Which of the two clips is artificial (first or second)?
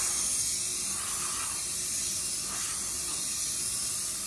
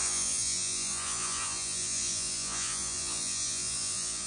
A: second